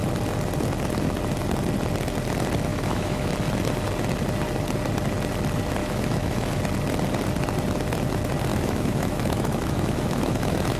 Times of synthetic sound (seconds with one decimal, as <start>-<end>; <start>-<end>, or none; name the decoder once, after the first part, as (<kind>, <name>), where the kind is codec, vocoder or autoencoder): 2.7-3.3 (autoencoder, DAC-VAE); 5.8-6.6; 8.5-10.8